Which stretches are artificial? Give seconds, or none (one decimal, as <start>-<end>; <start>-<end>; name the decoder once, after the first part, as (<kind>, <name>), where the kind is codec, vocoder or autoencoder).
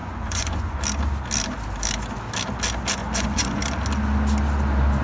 0.0-0.8 (vocoder, Vocos); 3.0-3.6